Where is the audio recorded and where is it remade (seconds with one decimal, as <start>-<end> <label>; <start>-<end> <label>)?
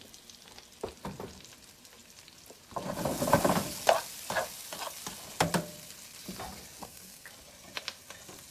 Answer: 0.0-6.8 recorded; 6.8-7.3 remade; 7.3-8.5 recorded